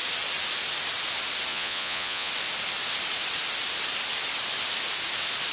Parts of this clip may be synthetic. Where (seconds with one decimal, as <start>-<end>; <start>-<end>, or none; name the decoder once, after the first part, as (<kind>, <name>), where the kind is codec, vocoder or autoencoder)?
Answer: 1.5-2.3 (vocoder, Vocos)